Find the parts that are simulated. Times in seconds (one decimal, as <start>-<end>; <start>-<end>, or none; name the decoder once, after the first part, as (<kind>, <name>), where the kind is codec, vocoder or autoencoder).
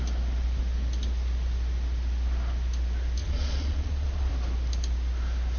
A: 3.2-4.3 (vocoder, Vocos)